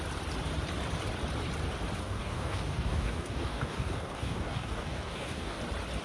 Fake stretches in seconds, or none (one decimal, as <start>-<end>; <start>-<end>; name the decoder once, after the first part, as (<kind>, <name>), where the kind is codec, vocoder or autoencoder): 2.0-5.6 (codec, DAC)